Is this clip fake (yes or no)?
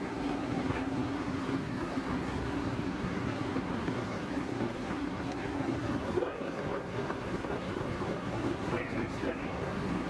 yes